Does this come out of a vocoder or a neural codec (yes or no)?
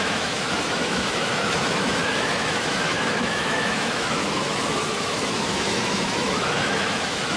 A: yes